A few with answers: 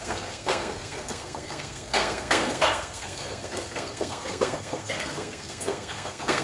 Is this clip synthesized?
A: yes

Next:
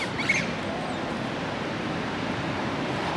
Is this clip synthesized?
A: no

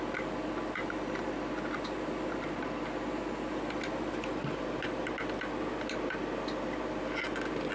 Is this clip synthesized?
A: no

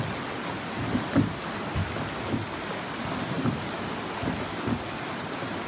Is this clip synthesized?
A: no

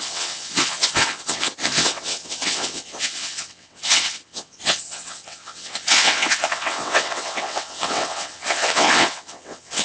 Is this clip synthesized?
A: yes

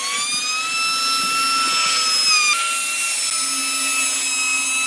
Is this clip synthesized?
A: no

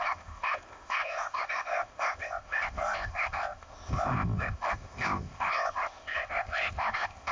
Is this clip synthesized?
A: yes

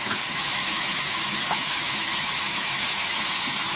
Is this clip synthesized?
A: yes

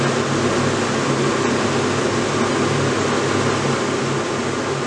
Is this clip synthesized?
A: no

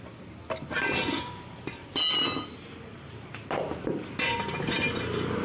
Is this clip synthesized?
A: no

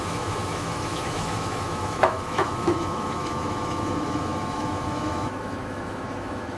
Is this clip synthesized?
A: yes